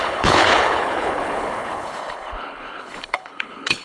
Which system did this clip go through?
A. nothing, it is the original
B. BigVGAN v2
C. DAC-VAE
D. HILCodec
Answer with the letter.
D